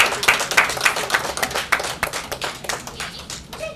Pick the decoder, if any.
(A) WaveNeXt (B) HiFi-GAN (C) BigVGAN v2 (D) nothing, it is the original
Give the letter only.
D